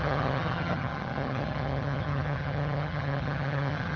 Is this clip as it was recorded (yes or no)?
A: no